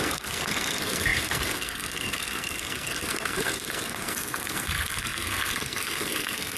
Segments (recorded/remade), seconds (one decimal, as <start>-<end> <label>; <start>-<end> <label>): 0.0-6.6 remade